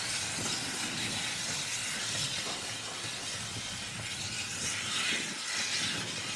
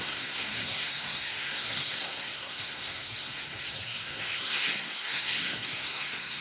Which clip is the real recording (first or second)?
first